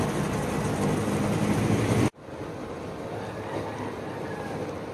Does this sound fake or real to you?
real